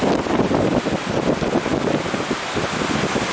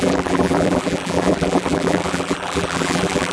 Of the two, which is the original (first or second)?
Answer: first